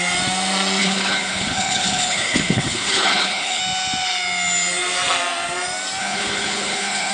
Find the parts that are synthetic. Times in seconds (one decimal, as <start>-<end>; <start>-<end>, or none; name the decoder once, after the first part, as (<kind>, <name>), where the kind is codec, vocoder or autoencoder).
0.8-3.6 (codec, HILCodec); 6.0-7.1

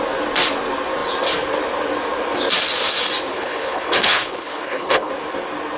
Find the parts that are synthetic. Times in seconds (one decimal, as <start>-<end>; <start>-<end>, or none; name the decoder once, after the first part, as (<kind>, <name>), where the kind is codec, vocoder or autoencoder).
3.3-5.1 (codec, HILCodec)

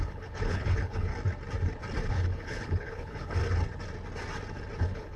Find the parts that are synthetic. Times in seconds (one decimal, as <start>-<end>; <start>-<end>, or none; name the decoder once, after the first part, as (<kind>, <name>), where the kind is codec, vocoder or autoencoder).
0.0-1.1 (codec, HILCodec); 2.0-3.4; 4.8-5.2

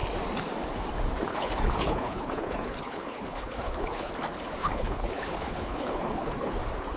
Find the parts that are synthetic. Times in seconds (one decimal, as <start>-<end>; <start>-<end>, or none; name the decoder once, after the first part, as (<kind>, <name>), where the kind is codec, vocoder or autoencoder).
1.3-4.1 (codec, HILCodec); 4.6-6.6

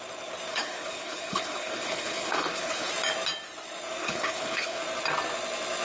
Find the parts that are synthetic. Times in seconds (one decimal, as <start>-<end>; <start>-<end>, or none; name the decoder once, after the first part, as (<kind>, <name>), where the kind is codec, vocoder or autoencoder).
0.5-2.9 (codec, HILCodec); 4.0-4.8

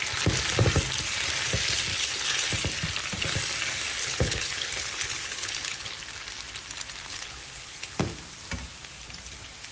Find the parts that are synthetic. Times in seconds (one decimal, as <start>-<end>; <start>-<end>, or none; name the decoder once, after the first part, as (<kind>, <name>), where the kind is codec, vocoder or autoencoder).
1.9-2.5 (codec, HILCodec); 4.0-6.0; 7.1-8.0